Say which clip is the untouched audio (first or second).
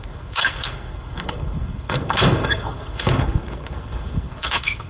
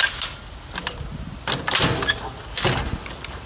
second